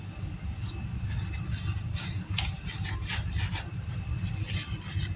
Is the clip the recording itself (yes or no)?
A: yes